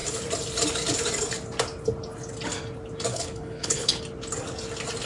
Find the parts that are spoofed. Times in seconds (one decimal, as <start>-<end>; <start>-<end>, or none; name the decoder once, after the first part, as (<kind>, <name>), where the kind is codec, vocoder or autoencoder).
3.1-4.0 (codec, HILCodec)